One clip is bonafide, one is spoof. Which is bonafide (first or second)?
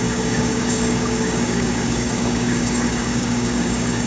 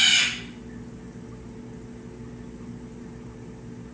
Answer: second